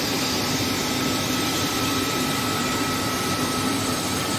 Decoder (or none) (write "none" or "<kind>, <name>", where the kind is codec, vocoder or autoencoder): vocoder, BigVGAN v2